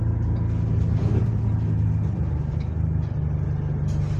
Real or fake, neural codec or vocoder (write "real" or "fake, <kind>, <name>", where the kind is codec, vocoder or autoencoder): real